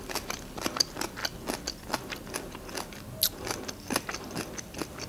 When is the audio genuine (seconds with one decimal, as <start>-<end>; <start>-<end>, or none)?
0.0-5.1